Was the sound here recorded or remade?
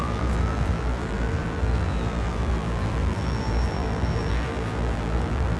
remade